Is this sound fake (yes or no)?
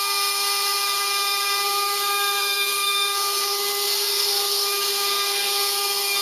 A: yes